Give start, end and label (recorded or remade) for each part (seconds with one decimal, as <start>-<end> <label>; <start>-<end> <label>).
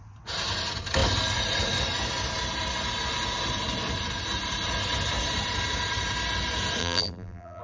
0.0-6.8 recorded; 6.8-7.6 remade